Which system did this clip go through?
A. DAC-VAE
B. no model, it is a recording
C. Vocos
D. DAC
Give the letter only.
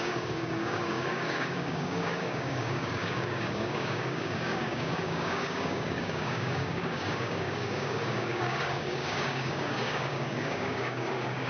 D